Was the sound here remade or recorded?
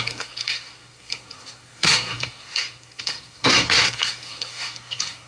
remade